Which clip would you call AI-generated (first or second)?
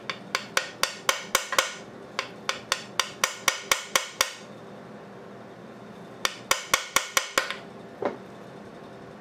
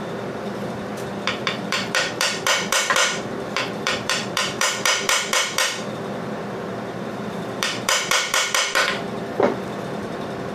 second